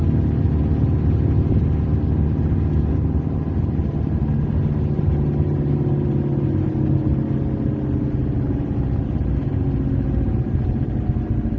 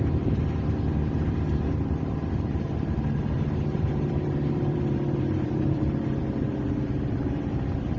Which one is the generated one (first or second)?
second